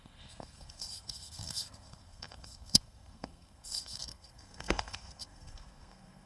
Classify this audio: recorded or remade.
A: remade